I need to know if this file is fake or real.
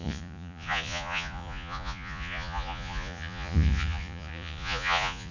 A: fake